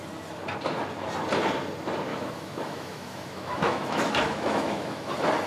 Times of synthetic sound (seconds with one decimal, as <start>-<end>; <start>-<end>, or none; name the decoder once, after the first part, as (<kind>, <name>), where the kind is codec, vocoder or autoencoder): 2.1-5.1 (autoencoder, DAC-VAE)